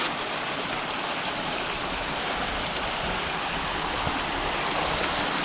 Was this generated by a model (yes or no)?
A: no